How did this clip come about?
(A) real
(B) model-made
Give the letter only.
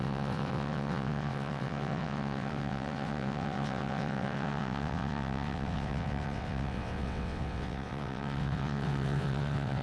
B